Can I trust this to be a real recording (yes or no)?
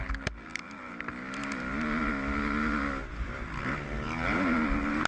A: yes